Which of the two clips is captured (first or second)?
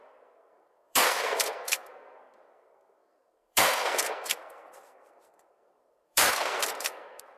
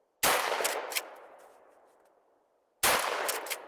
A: second